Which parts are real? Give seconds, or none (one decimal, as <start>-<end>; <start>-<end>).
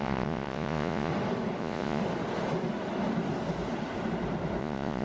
1.1-1.6; 2.0-4.6